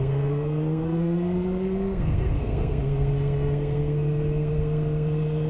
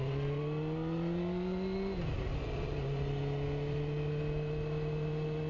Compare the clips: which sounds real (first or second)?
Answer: second